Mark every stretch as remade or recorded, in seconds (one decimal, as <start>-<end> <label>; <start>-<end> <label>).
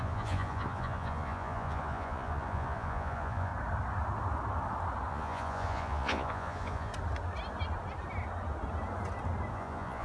0.0-3.5 remade; 3.5-5.1 recorded; 5.1-6.9 remade; 6.9-9.5 recorded; 9.5-10.0 remade